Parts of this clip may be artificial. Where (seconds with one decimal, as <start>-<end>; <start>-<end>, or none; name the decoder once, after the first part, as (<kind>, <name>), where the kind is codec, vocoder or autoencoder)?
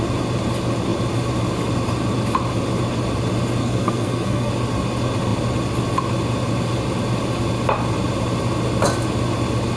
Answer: 3.6-4.5 (codec, SNAC)